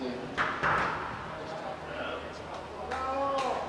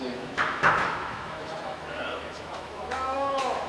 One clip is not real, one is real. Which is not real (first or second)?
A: second